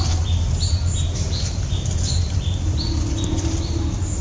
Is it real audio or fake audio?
real